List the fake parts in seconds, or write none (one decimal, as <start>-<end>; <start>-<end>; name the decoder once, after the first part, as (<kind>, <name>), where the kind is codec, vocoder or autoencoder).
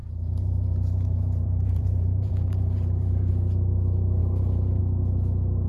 0.0-3.3 (vocoder, BigVGAN v2); 4.2-4.8